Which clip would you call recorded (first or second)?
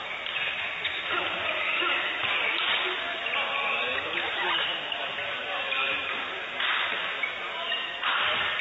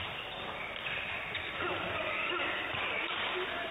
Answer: first